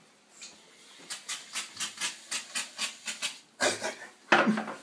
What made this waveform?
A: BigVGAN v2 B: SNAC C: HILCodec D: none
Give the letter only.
D